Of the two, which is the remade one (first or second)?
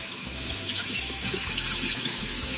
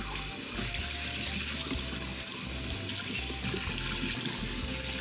first